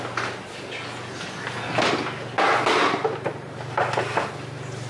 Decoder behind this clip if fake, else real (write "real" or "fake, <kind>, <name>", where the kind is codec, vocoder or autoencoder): real